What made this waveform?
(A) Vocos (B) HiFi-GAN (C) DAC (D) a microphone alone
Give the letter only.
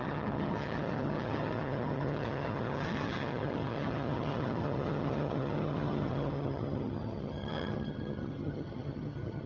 B